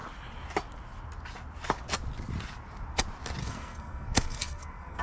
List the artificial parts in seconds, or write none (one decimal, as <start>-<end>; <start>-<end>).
3.4-5.0